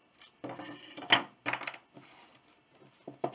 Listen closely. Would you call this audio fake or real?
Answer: real